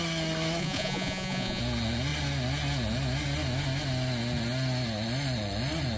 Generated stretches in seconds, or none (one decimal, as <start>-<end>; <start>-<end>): 0.6-1.6